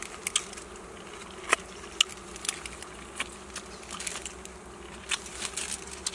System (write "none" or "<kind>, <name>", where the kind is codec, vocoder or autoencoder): none